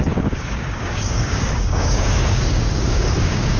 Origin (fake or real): fake